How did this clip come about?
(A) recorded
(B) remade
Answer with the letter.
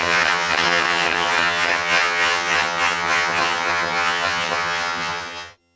B